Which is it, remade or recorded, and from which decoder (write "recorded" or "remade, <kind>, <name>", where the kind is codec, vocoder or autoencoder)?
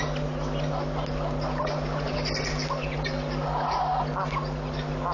recorded